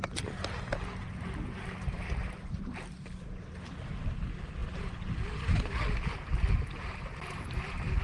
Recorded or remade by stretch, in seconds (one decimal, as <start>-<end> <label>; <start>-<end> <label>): 0.0-8.0 recorded